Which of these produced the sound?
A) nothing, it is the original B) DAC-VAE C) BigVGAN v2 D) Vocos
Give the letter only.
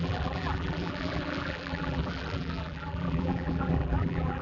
C